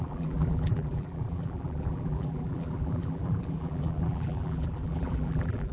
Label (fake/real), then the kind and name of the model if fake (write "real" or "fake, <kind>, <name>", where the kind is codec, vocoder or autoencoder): fake, vocoder, BigVGAN v2